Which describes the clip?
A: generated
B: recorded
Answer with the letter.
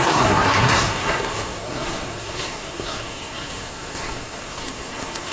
A